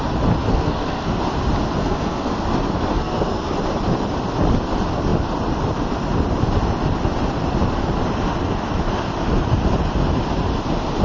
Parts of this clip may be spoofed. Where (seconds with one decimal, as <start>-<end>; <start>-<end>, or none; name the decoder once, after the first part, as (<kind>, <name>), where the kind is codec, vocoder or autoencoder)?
0.5-1.2 (codec, SNAC); 1.8-2.4; 2.9-3.5